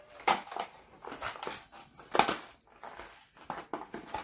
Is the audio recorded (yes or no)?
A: yes